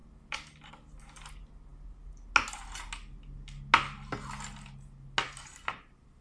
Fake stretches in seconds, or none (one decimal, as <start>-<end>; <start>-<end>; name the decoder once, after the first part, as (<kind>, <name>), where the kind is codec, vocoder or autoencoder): none